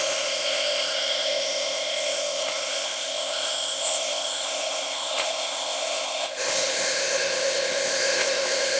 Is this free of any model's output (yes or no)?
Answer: no